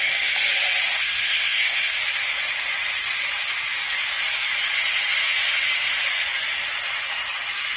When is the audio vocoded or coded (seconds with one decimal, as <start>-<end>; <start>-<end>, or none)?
0.9-2.0